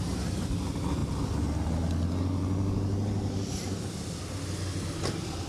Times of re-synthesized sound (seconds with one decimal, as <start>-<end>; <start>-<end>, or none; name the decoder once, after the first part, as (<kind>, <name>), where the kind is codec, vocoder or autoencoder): none